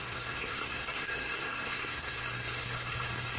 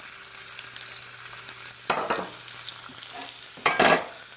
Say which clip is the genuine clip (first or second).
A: second